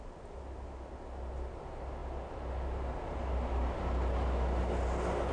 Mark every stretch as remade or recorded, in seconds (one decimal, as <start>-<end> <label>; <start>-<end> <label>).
0.0-5.3 recorded